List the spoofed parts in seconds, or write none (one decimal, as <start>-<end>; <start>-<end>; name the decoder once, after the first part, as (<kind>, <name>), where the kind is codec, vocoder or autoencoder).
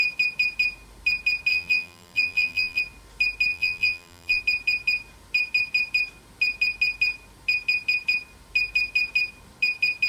1.5-2.8 (vocoder, BigVGAN v2); 3.5-4.4